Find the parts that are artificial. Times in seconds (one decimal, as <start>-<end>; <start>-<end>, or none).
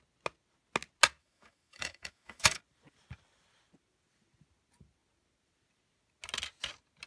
1.2-2.6